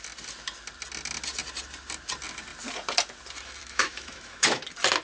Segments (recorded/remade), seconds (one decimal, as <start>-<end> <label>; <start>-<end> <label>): 0.0-3.6 recorded; 3.6-4.6 remade; 4.6-5.0 recorded